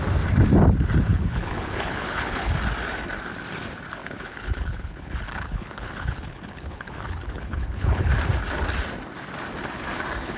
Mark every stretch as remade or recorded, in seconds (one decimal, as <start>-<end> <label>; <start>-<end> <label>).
0.0-1.1 recorded; 1.1-2.5 remade; 2.5-4.0 recorded; 4.0-8.1 remade; 8.1-10.4 recorded